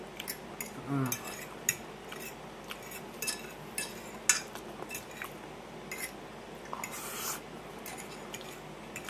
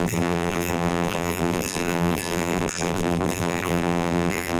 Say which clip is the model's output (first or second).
second